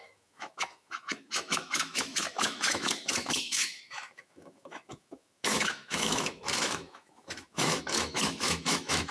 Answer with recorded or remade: remade